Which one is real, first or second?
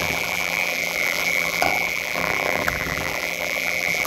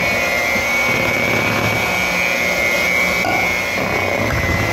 second